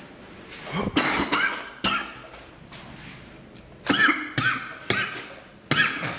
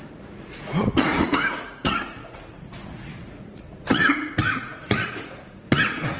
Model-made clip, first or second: second